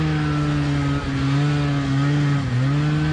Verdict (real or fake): real